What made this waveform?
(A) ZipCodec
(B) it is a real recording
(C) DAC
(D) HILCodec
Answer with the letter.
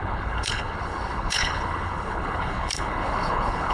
D